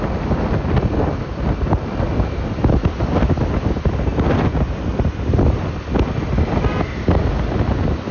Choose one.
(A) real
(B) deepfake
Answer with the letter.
A